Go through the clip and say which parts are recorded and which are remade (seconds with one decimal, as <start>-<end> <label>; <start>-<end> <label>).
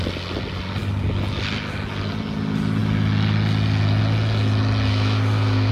0.0-4.9 recorded; 4.9-5.7 remade